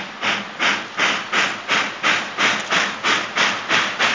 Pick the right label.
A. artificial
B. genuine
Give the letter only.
B